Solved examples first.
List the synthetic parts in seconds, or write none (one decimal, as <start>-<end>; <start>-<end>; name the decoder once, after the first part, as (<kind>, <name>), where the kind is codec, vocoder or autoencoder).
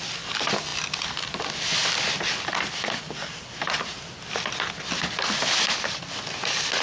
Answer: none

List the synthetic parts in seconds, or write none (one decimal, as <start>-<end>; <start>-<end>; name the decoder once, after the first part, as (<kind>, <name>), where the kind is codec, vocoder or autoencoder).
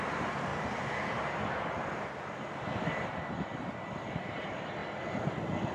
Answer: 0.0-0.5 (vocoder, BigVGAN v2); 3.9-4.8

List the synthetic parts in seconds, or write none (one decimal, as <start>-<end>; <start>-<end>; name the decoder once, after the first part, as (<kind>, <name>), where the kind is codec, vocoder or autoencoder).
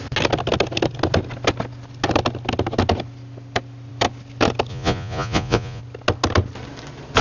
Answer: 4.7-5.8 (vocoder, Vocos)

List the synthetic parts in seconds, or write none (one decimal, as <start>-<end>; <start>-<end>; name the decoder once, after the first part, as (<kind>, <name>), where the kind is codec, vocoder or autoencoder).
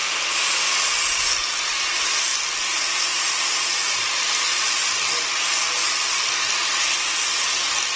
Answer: none